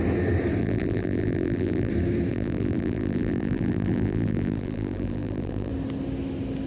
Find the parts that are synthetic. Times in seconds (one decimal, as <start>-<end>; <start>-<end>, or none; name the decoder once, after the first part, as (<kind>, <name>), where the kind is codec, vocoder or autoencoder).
0.6-1.9 (vocoder, BigVGAN v2); 2.3-5.7